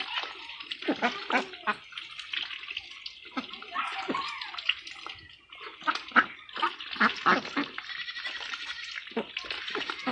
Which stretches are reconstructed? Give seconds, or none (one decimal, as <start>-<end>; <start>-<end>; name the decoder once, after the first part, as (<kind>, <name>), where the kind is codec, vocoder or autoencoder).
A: none